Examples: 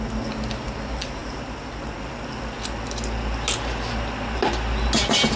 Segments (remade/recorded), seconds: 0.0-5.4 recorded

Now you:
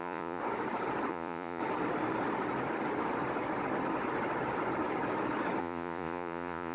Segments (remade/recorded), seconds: 0.0-0.4 remade; 0.4-1.1 recorded; 1.1-1.6 remade; 1.6-5.6 recorded; 5.6-6.7 remade

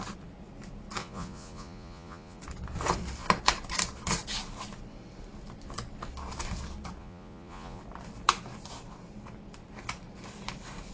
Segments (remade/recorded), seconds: 0.0-1.0 recorded; 1.0-2.4 remade; 2.4-7.0 recorded; 7.0-7.8 remade; 7.8-10.9 recorded

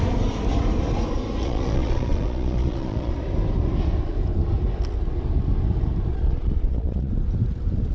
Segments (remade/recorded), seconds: 0.0-1.4 recorded; 1.4-3.1 remade; 3.1-6.1 recorded; 6.1-7.1 remade; 7.1-7.9 recorded

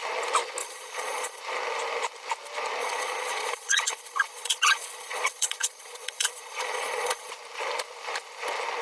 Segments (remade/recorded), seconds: 0.0-0.6 recorded; 0.6-1.4 remade; 1.4-2.8 recorded; 2.8-7.3 remade; 7.3-8.8 recorded

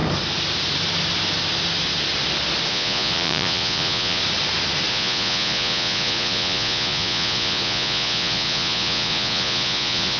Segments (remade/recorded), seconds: 0.0-2.7 recorded; 2.7-4.2 remade; 4.2-4.9 recorded; 4.9-10.2 remade